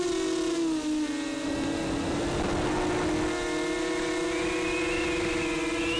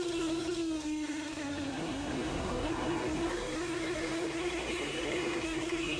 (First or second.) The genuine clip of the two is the first